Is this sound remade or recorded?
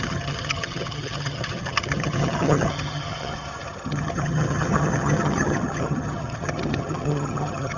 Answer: remade